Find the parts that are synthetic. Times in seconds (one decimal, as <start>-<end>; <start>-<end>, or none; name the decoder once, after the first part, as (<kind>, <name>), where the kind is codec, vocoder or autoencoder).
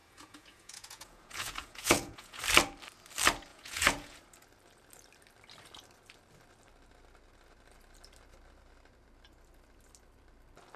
0.0-2.4 (vocoder, Vocos); 3.5-4.2